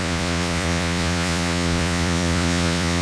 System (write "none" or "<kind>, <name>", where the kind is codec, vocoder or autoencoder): vocoder, Vocos